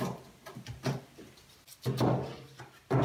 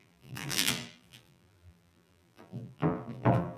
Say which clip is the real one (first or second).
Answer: first